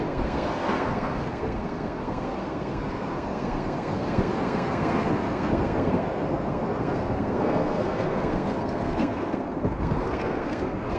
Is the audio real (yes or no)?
no